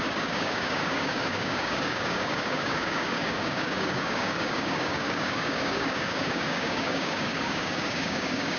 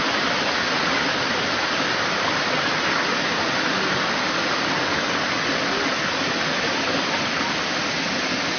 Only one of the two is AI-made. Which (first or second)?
first